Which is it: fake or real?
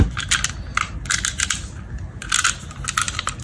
real